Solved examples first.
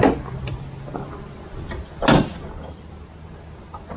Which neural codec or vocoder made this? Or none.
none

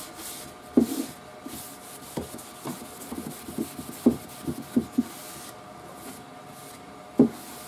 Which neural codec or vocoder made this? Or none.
none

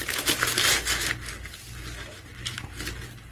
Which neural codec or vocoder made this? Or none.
none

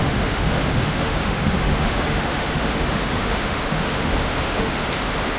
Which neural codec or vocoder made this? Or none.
autoencoder, DAC-VAE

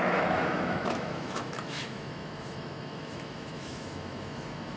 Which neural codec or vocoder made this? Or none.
autoencoder, DAC-VAE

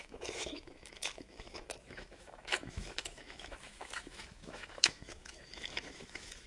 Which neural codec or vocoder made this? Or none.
autoencoder, DAC-VAE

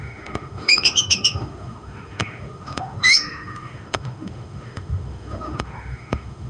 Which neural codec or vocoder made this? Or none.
autoencoder, DAC-VAE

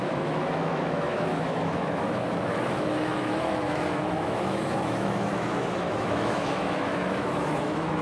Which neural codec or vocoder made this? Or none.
autoencoder, DAC-VAE